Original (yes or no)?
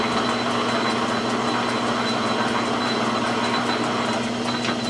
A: yes